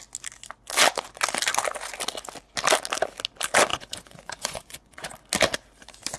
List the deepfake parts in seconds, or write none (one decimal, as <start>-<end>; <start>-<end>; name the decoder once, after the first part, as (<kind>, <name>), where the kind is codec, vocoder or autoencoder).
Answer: 3.7-5.1 (vocoder, Vocos)